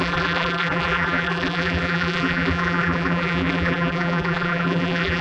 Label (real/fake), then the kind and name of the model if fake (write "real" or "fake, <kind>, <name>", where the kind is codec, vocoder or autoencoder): fake, vocoder, BigVGAN v2